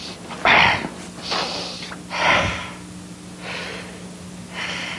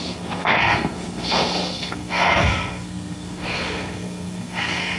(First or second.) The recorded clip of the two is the first